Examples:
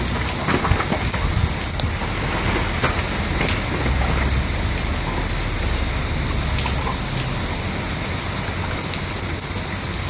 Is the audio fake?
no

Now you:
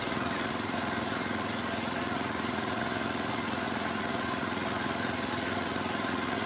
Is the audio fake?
yes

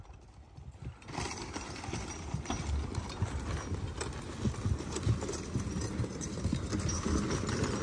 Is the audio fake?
no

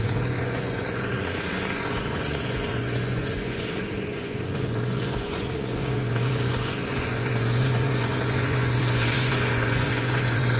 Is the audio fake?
yes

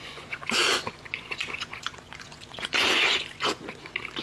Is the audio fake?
yes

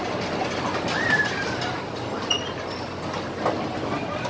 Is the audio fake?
no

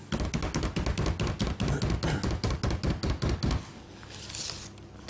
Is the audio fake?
no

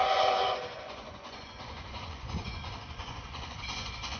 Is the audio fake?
yes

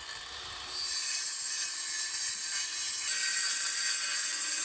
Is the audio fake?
no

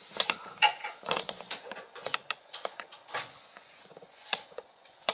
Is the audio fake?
yes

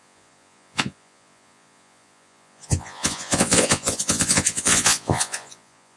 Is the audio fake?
yes